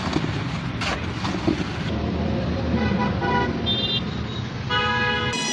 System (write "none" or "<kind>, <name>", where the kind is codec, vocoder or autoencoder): none